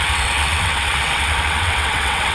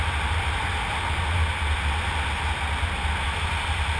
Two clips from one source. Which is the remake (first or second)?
first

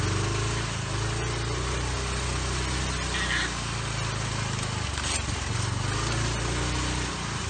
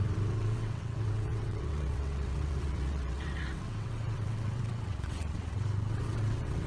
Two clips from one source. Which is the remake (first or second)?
second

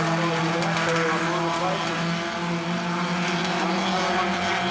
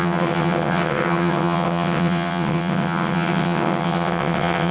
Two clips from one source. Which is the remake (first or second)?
second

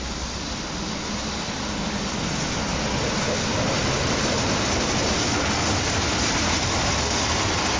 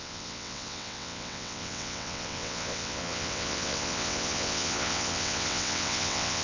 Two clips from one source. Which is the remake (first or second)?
second